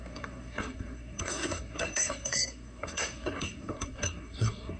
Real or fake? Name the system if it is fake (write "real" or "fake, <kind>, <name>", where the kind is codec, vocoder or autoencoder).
fake, codec, SNAC